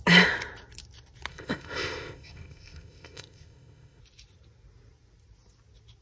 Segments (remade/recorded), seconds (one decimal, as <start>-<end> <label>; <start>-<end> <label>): 0.0-1.3 recorded; 1.3-4.0 remade; 4.0-6.0 recorded